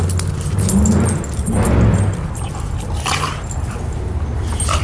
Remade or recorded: recorded